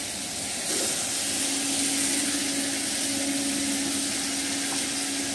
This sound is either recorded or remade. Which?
recorded